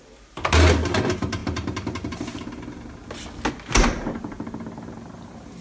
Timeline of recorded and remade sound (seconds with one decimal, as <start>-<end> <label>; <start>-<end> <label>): 0.0-5.6 recorded